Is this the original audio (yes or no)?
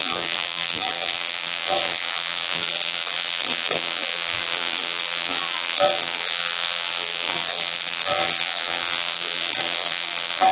no